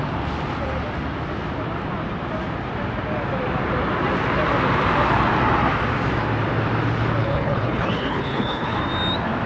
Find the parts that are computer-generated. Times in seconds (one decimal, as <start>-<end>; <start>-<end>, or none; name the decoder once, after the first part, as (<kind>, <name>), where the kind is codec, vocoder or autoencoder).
7.2-8.8 (codec, HILCodec)